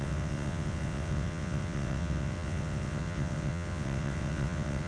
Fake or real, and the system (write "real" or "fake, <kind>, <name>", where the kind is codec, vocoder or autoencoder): fake, vocoder, WaveNeXt